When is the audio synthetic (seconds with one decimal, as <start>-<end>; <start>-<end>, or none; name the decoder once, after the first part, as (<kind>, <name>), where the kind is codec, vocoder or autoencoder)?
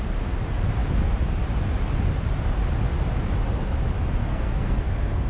4.2-5.3 (codec, SNAC)